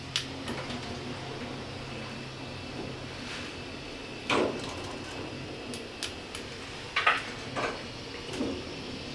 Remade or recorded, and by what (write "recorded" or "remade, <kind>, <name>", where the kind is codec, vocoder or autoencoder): recorded